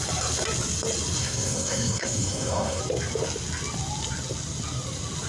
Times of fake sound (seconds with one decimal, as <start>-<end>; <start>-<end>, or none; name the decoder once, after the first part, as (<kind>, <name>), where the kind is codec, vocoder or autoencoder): 1.2-2.8 (codec, SNAC)

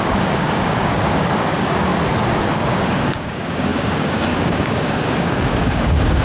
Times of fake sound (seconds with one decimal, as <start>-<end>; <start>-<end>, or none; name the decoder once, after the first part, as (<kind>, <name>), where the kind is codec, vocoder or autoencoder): 0.0-1.9 (codec, DAC); 2.5-6.2